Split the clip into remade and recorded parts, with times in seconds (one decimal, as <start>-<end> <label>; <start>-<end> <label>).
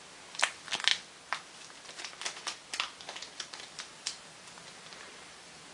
0.0-5.7 recorded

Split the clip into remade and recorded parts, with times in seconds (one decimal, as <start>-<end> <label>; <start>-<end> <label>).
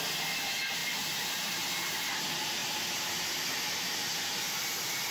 0.0-0.8 recorded; 0.8-1.6 remade; 1.6-5.1 recorded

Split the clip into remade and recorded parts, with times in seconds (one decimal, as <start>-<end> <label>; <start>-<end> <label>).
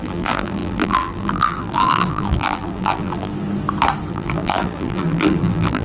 0.0-3.3 remade; 3.3-4.1 recorded; 4.1-5.8 remade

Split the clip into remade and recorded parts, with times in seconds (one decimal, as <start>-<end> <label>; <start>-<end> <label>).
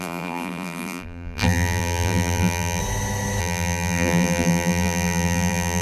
0.0-2.8 remade; 2.8-3.4 recorded; 3.4-5.8 remade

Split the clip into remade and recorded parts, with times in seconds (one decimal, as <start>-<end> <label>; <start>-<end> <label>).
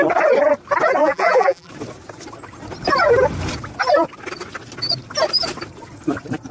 0.0-1.0 recorded; 1.0-1.7 remade; 1.7-6.5 recorded